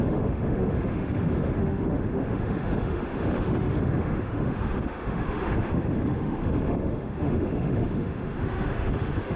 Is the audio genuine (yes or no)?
no